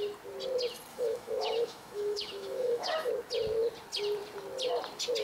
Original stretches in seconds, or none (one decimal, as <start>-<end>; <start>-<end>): 0.0-0.9; 3.1-5.2